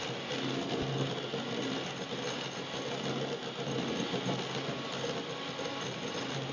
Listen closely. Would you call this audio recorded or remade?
recorded